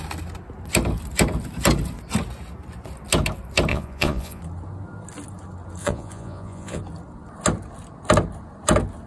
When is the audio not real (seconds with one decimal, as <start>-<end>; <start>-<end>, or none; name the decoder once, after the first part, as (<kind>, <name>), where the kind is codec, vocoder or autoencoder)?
3.7-4.4 (vocoder, Vocos); 5.8-6.8